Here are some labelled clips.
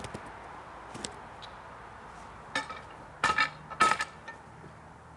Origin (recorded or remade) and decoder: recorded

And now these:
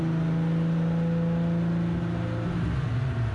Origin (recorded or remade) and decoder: recorded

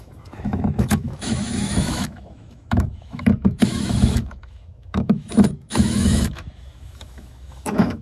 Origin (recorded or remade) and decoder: remade, autoencoder, DAC-VAE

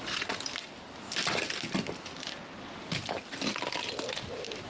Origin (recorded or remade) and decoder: recorded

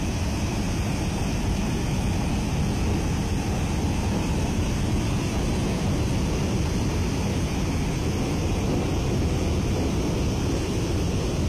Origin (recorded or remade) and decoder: recorded